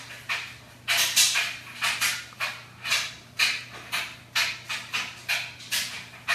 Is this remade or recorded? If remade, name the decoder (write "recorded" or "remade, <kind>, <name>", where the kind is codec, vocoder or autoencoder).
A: recorded